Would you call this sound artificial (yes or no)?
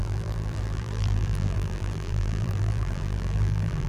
yes